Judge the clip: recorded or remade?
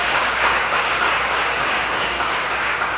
remade